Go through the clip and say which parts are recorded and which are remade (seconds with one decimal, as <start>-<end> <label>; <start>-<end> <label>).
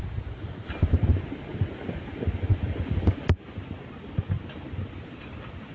0.0-5.7 recorded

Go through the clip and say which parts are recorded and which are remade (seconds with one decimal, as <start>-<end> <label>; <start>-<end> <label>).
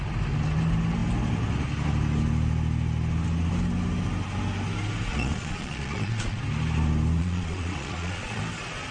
0.0-5.1 recorded; 5.1-6.4 remade; 6.4-7.2 recorded; 7.2-8.4 remade; 8.4-8.9 recorded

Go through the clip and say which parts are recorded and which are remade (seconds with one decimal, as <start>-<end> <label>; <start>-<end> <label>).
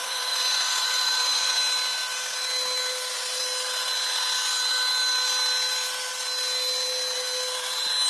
0.0-1.6 remade; 1.6-8.1 recorded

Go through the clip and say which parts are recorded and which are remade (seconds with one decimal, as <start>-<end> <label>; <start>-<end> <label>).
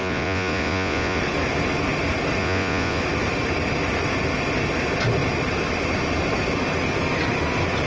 0.0-1.2 remade; 1.2-2.4 recorded; 2.4-3.0 remade; 3.0-7.9 recorded